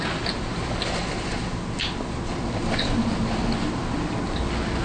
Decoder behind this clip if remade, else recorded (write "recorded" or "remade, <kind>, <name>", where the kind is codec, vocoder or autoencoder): recorded